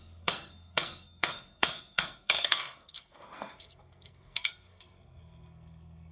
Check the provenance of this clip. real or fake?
fake